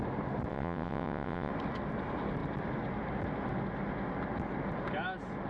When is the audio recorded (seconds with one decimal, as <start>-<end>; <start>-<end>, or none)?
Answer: 0.0-0.5; 1.5-5.5